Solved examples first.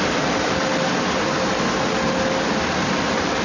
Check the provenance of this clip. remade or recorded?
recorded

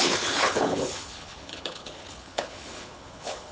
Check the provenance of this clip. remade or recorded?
remade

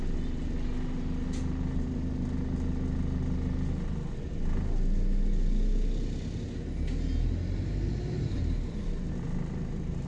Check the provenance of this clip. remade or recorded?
recorded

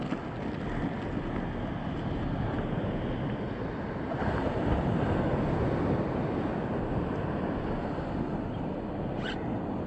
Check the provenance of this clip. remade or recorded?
recorded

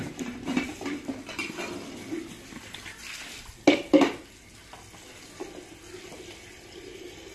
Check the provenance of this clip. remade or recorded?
recorded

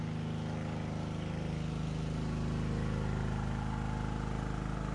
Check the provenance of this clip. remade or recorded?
recorded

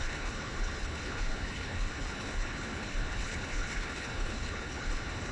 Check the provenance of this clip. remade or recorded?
remade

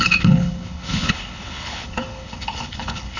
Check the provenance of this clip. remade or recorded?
remade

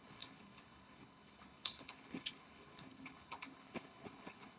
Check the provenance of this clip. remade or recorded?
remade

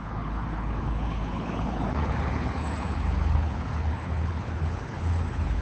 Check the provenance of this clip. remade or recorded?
remade